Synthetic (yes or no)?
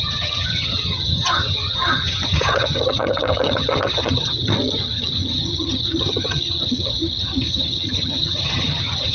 yes